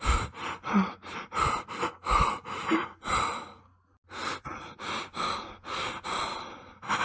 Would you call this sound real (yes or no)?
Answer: yes